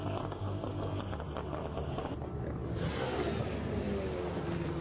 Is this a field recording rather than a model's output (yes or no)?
yes